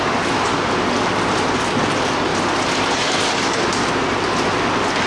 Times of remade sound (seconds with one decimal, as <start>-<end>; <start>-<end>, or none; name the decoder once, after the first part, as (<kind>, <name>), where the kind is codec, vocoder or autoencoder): none